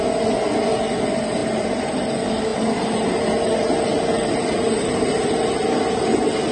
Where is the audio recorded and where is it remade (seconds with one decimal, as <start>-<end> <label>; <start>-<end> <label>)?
0.0-6.5 recorded